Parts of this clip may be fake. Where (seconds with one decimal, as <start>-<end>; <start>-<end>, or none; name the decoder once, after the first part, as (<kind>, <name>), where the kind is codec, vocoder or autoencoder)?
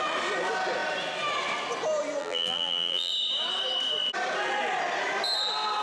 2.2-3.1 (vocoder, BigVGAN v2)